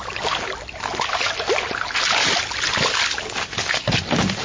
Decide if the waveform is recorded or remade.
recorded